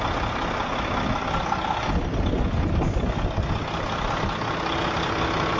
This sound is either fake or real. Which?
real